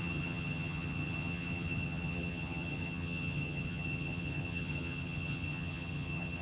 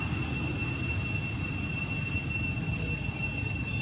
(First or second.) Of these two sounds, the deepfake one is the first